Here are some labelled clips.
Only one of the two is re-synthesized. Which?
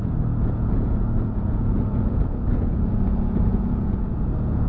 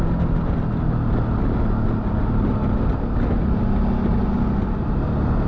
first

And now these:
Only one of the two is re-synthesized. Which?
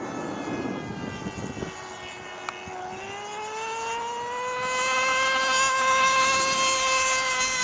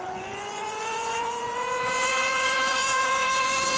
second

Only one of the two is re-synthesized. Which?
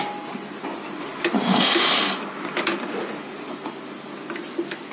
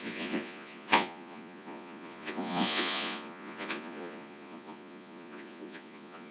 second